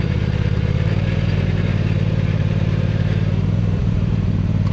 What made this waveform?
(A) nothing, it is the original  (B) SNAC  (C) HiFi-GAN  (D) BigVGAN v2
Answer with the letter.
D